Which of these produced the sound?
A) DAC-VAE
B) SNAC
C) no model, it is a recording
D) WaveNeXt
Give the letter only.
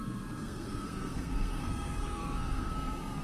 B